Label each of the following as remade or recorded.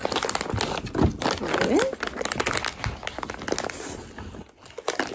recorded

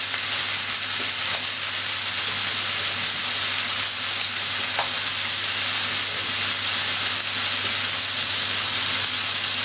recorded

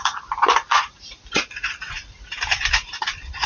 remade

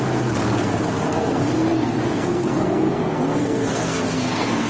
remade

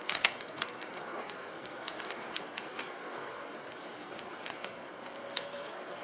remade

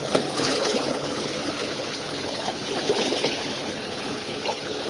remade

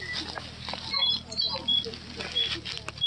recorded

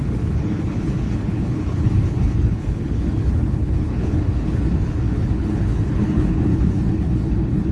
remade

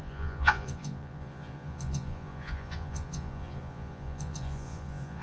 remade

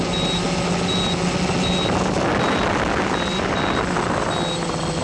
recorded